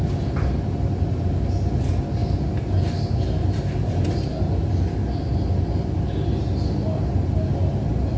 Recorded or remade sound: recorded